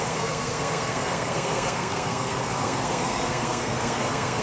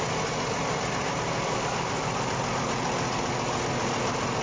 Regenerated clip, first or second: first